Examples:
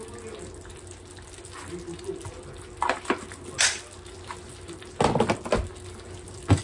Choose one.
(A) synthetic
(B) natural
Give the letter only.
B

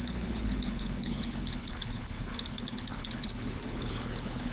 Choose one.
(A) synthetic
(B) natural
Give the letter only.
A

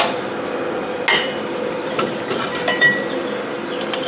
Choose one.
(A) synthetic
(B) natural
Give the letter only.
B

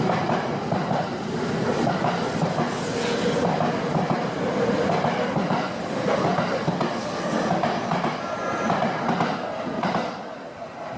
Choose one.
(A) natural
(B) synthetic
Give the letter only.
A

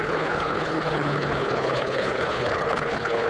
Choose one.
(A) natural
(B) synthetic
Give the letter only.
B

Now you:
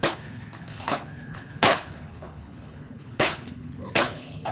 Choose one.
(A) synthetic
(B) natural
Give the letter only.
A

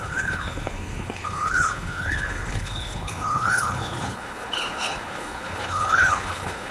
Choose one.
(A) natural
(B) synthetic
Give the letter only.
B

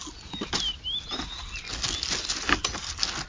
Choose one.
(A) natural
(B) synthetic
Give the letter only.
A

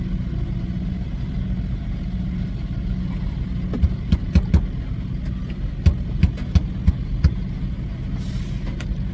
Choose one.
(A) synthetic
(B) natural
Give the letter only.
B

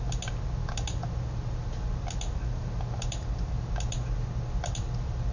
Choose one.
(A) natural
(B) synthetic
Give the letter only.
A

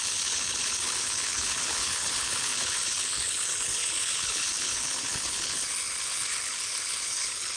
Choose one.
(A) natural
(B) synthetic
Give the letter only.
B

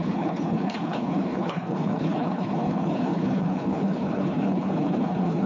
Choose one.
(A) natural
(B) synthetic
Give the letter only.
B